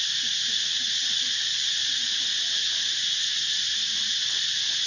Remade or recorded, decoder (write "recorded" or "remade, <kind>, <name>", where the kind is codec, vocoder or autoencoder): remade, vocoder, Vocos